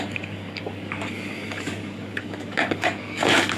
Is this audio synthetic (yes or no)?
yes